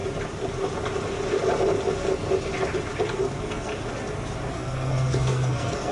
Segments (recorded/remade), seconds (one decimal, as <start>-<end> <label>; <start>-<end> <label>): 0.0-3.1 recorded; 3.1-3.7 remade; 3.7-4.5 recorded; 4.5-5.9 remade